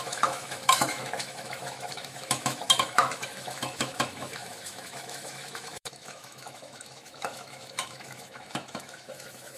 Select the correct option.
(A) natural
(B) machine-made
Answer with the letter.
B